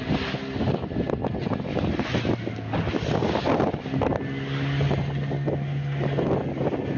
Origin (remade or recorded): recorded